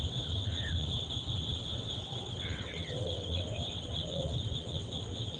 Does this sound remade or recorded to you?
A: remade